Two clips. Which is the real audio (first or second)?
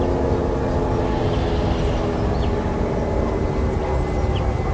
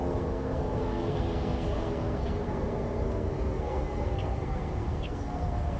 first